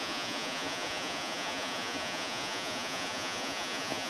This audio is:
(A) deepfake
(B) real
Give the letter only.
A